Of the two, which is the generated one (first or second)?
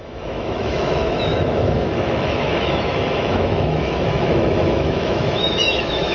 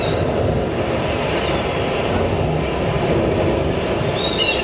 first